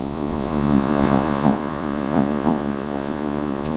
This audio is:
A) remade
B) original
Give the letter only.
A